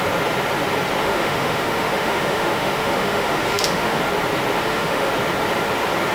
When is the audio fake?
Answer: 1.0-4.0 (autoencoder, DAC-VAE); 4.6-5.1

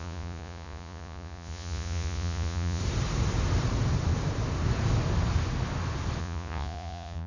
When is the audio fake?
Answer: 0.0-2.8 (vocoder, Vocos); 6.2-7.3

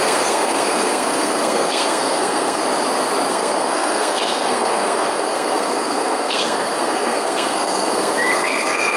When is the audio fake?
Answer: 0.0-2.6 (codec, SNAC); 3.3-9.0

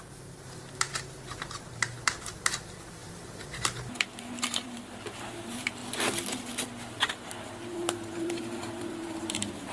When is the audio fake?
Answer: 0.0-5.8 (vocoder, BigVGAN v2); 7.0-9.7